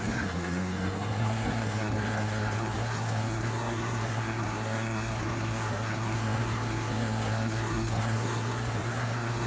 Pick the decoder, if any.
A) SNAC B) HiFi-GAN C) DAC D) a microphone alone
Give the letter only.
A